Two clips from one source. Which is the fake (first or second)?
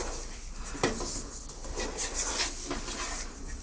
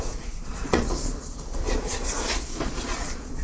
second